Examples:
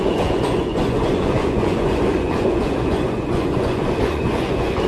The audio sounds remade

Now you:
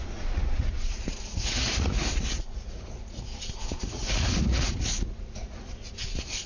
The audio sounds remade